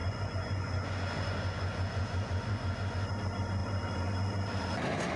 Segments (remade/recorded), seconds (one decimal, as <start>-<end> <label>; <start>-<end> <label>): 0.0-3.1 remade; 3.1-5.2 recorded